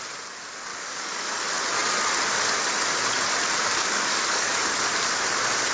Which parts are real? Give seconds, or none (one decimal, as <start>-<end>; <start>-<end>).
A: 0.0-0.7; 1.3-3.7; 4.6-5.7

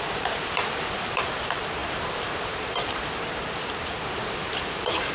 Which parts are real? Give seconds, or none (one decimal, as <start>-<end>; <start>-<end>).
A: none

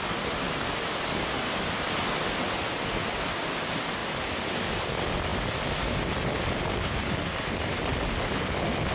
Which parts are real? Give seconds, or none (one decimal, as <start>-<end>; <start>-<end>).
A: 0.0-8.9

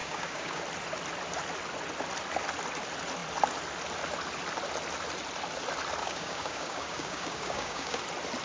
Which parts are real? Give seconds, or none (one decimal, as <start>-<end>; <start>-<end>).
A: 0.6-6.0; 8.0-8.4

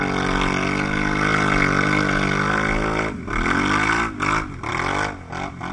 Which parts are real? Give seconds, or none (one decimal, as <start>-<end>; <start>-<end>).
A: 0.0-5.7

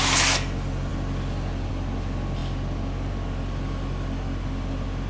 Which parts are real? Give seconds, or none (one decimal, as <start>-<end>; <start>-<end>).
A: 0.0-5.1

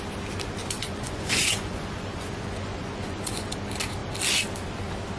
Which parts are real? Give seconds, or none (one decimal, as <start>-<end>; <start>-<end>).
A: 0.0-0.6; 3.5-5.2